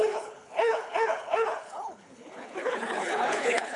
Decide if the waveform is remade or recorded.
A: remade